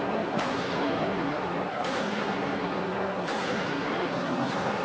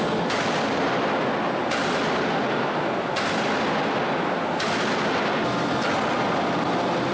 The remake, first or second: first